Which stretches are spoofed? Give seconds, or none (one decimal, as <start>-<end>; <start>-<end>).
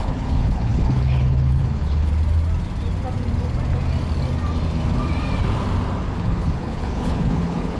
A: 0.0-2.1; 6.2-7.8